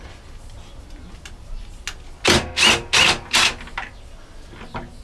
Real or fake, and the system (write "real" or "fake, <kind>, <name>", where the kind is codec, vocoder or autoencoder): real